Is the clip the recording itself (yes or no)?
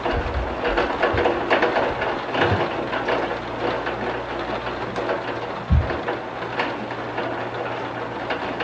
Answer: yes